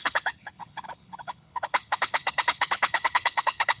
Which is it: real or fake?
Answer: fake